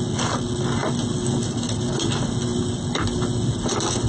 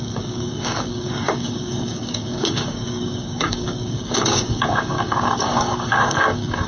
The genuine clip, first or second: first